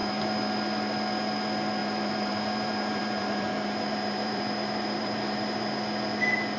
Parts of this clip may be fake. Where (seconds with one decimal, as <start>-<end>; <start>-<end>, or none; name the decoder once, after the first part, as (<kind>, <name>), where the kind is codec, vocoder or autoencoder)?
0.0-0.5 (vocoder, BigVGAN v2); 1.8-5.6